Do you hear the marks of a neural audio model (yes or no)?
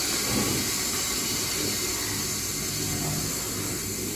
no